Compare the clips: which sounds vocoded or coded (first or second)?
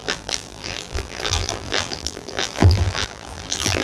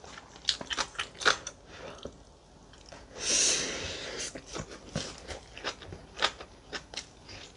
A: first